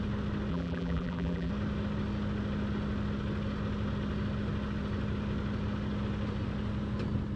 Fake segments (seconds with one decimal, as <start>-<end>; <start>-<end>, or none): 0.5-1.5